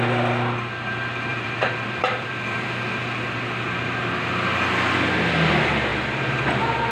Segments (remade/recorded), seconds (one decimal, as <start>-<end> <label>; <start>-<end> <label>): 0.0-1.3 recorded; 1.3-3.0 remade; 3.0-6.9 recorded